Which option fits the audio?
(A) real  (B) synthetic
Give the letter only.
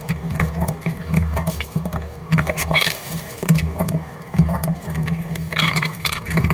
B